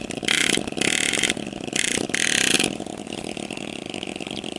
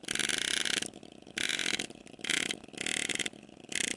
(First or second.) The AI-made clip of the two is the first